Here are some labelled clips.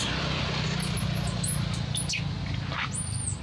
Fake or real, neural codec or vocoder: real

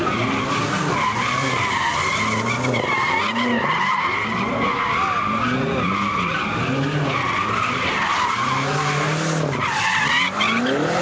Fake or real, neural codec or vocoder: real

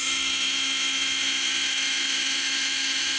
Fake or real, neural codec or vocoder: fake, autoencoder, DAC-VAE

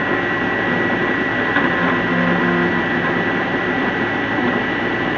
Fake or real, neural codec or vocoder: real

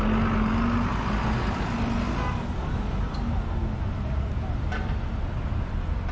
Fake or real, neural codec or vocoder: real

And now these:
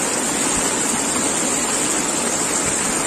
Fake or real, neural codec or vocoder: real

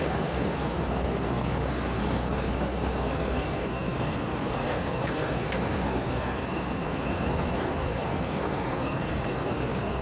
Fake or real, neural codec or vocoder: fake, codec, SNAC